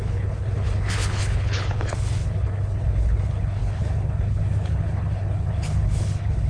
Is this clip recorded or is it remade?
remade